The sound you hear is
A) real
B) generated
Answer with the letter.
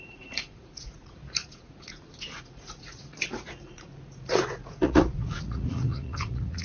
B